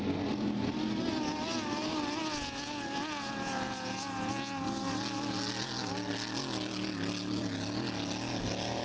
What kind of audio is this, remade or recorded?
recorded